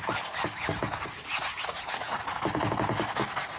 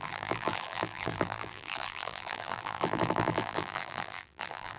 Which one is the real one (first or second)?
first